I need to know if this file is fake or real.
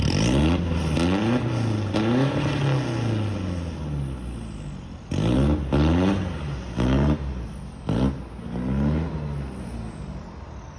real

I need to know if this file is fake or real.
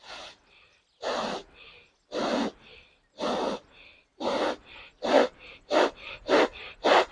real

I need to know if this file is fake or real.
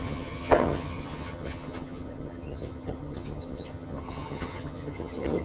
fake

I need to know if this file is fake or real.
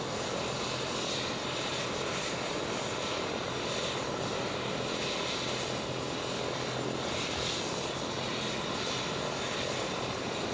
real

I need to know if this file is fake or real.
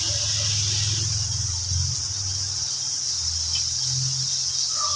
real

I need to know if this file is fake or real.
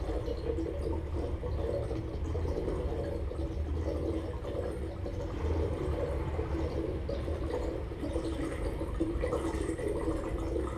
real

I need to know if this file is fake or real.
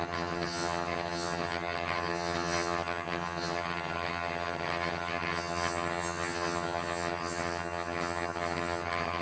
fake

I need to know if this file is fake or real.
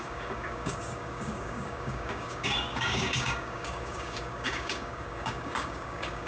fake